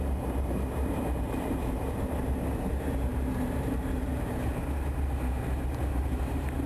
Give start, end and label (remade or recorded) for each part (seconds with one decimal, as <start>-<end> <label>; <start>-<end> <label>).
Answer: 0.0-6.7 remade